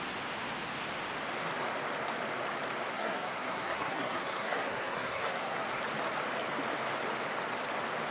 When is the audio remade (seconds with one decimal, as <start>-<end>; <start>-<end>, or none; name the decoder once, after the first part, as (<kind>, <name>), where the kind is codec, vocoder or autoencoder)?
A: 2.9-5.8 (codec, SNAC)